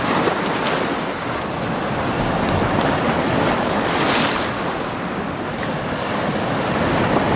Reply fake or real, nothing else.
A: real